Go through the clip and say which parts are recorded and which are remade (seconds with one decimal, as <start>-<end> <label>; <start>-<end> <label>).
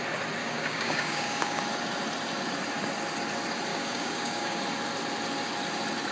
0.0-0.4 recorded; 0.4-1.6 remade; 1.6-3.7 recorded; 3.7-4.6 remade; 4.6-6.1 recorded